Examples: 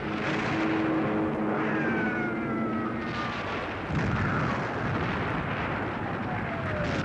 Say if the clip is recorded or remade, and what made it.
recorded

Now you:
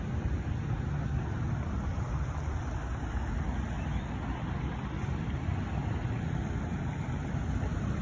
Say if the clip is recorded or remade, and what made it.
recorded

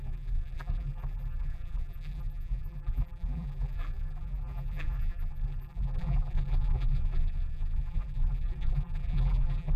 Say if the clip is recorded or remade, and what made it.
remade, vocoder, BigVGAN v2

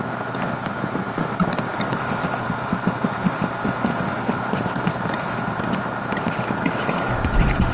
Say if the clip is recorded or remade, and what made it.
remade, vocoder, BigVGAN v2